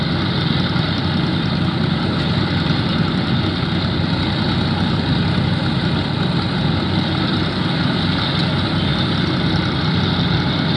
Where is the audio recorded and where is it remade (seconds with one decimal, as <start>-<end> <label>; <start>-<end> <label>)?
0.0-10.8 recorded